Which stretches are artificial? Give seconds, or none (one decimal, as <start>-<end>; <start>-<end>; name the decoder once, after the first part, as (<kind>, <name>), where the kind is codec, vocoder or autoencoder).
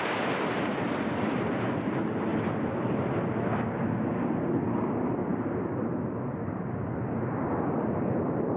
2.3-3.5 (vocoder, BigVGAN v2); 5.3-8.6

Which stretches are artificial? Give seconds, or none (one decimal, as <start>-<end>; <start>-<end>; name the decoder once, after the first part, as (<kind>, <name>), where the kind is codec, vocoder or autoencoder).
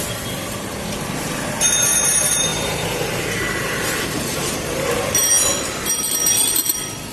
2.5-5.3 (vocoder, BigVGAN v2)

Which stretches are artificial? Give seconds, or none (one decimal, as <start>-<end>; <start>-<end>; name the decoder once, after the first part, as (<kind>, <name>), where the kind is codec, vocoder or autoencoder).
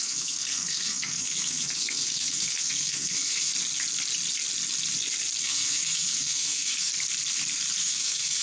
0.0-3.5 (codec, SNAC); 5.4-6.9; 7.8-8.4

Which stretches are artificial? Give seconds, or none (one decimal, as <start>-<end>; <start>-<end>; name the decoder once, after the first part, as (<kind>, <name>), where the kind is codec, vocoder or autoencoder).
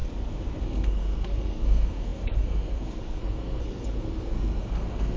0.6-5.2 (codec, SNAC)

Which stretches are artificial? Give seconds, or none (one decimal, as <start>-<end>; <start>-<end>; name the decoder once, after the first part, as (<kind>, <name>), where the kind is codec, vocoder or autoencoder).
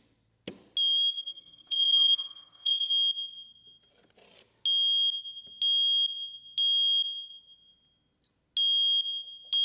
1.1-2.9 (codec, SNAC)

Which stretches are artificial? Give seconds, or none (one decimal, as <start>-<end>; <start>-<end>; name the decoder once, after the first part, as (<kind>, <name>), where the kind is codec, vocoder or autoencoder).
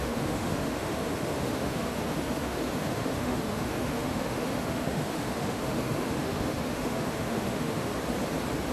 0.0-7.9 (autoencoder, DAC-VAE)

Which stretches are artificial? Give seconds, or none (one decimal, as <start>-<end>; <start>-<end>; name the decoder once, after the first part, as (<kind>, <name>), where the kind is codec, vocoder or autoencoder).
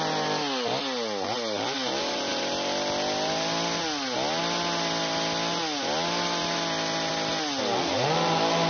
none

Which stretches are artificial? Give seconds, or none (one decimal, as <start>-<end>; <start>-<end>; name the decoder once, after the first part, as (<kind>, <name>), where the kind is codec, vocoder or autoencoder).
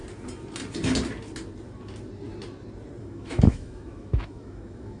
3.0-5.0 (autoencoder, DAC-VAE)